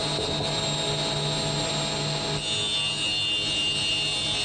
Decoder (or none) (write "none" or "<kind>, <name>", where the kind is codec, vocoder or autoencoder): none